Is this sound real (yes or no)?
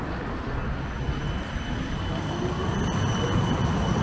yes